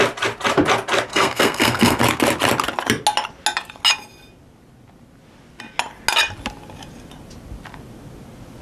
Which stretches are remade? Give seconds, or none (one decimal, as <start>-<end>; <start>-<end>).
1.1-2.0